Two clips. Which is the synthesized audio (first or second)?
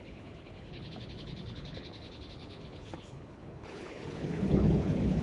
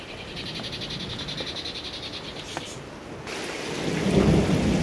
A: first